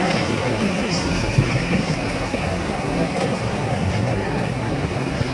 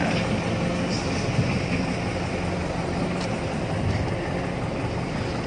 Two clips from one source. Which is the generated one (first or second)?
first